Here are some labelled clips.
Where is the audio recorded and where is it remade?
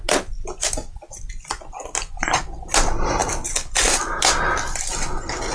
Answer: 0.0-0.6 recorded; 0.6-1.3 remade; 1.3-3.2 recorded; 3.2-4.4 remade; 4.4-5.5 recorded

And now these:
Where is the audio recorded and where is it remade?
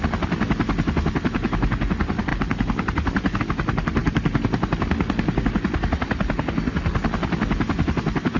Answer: 0.0-8.4 recorded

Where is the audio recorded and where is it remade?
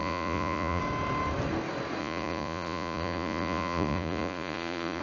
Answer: 0.0-0.8 remade; 0.8-2.0 recorded; 2.0-5.0 remade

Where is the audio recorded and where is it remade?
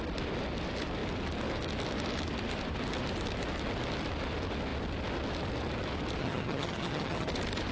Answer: 0.0-6.2 recorded; 6.2-7.3 remade; 7.3-7.7 recorded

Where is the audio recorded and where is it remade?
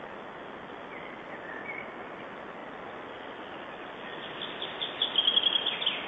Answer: 0.0-6.1 recorded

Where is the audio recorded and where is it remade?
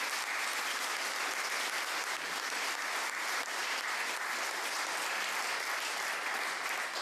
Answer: 0.0-7.0 recorded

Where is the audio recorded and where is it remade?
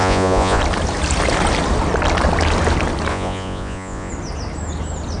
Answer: 0.0-0.6 remade; 0.6-3.1 recorded; 3.1-4.1 remade; 4.1-5.2 recorded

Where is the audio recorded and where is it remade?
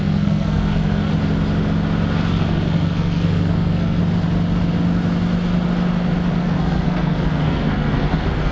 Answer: 0.0-1.1 remade; 1.1-2.3 recorded; 2.3-4.0 remade; 4.0-6.4 recorded; 6.4-8.5 remade